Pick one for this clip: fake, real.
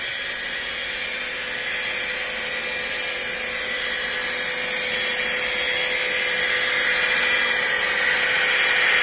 real